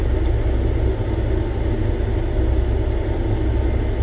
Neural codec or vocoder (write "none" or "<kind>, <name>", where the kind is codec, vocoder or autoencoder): none